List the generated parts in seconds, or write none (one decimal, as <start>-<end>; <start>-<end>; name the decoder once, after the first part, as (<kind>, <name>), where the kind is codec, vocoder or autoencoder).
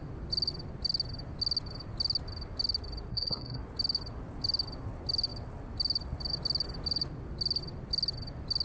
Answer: 3.1-3.6 (codec, SNAC)